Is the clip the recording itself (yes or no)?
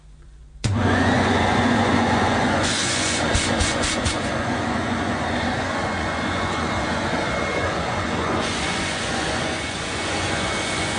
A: no